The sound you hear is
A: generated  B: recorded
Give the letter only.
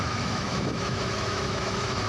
A